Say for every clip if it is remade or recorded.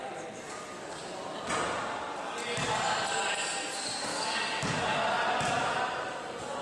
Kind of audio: recorded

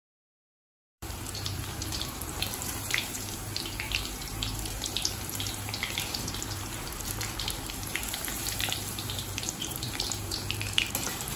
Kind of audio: remade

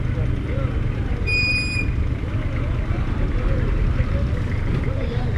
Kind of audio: recorded